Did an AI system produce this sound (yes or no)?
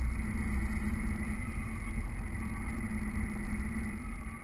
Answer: no